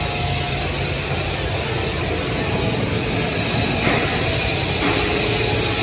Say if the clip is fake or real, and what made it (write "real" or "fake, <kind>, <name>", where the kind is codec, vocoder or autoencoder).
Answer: real